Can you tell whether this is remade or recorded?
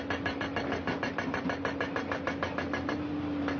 recorded